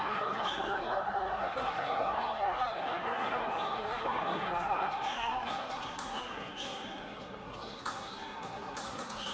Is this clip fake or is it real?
fake